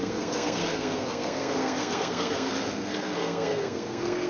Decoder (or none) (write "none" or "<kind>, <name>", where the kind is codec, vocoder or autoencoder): codec, SNAC